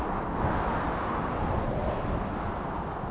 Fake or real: real